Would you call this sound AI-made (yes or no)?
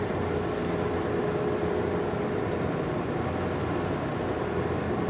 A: no